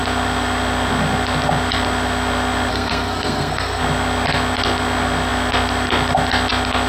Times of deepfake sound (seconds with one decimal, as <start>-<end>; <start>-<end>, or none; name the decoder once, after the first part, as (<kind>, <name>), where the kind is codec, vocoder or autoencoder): 2.7-3.8 (codec, SNAC)